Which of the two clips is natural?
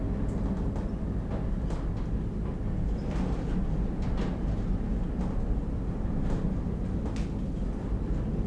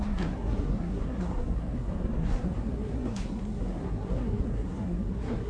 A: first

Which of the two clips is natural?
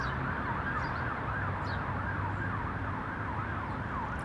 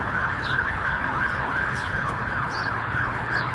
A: first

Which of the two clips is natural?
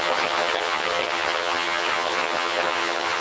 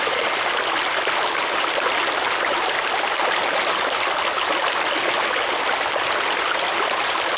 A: second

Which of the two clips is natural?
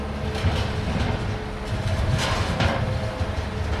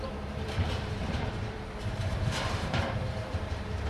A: first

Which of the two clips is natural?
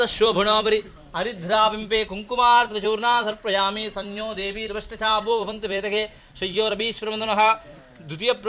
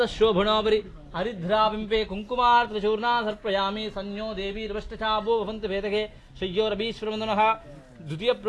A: second